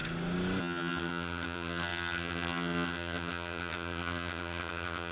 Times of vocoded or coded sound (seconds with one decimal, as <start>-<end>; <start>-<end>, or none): 0.6-5.1